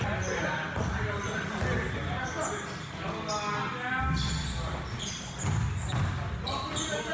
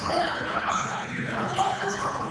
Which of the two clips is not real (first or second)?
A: second